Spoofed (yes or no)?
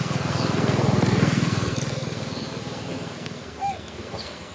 yes